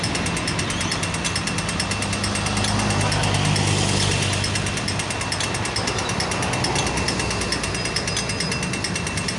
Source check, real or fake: real